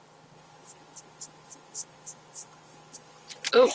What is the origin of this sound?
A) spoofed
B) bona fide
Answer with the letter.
B